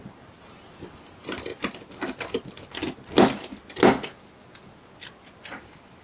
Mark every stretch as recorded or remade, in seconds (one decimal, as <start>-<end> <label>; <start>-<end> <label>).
0.0-6.0 recorded